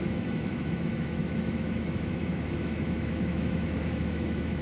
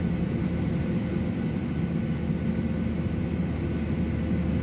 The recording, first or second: second